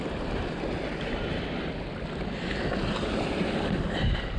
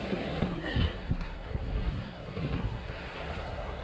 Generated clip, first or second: second